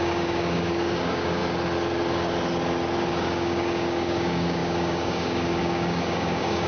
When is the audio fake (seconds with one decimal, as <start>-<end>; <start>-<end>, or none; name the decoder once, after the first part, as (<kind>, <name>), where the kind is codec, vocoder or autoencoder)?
0.0-1.4 (codec, DAC); 3.1-6.7